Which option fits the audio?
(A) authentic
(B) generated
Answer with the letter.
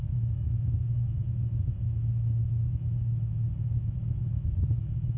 B